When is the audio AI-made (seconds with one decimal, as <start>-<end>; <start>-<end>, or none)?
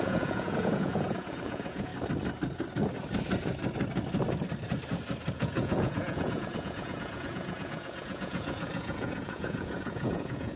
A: 0.0-1.9; 5.3-10.6